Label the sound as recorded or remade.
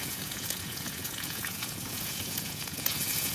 remade